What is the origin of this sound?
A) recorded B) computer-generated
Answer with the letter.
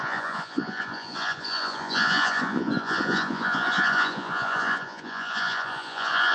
B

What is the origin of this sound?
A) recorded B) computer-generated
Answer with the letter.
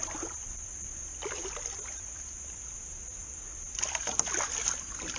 A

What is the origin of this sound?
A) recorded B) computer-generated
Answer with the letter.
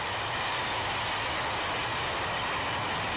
A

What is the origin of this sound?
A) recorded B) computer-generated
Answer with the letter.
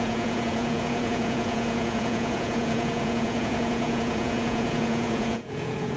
B